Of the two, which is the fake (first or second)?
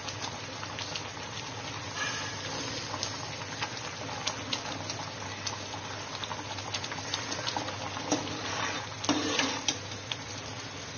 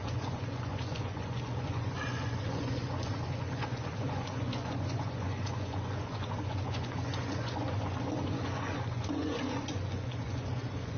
second